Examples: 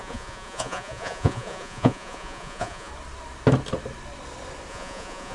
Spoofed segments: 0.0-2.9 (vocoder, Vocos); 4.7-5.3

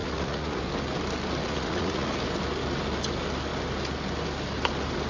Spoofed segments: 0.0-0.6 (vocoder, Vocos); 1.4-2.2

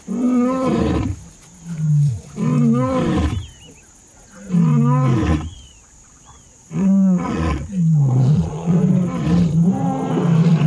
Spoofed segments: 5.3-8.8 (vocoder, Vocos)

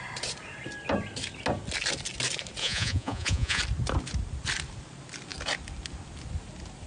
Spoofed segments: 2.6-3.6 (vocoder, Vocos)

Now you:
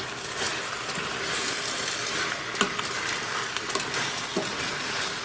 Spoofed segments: none